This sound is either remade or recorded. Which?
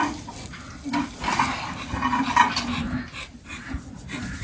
recorded